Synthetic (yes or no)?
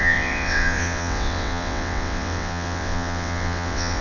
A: yes